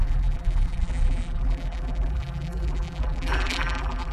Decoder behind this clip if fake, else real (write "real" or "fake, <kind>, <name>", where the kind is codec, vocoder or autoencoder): fake, vocoder, BigVGAN v2